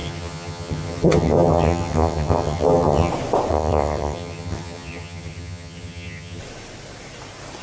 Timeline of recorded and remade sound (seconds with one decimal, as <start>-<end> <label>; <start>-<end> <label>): 0.0-3.1 remade; 3.1-3.5 recorded; 3.5-6.4 remade; 6.4-7.6 recorded